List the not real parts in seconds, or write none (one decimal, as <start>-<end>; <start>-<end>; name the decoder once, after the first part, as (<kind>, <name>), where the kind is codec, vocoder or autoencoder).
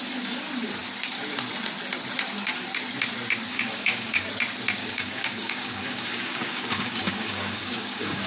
3.5-4.3 (codec, DAC); 4.8-8.3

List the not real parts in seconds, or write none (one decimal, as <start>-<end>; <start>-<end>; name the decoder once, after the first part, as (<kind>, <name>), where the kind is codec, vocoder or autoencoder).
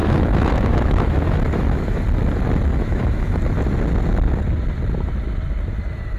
0.0-2.0 (autoencoder, DAC-VAE); 2.7-3.4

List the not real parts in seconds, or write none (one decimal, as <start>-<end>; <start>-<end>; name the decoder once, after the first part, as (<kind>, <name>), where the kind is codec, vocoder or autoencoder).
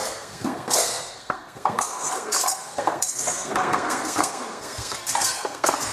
0.0-5.9 (codec, SNAC)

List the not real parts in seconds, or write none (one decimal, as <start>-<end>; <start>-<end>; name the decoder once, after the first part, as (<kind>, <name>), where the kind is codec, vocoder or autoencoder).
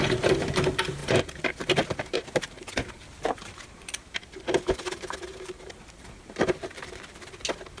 none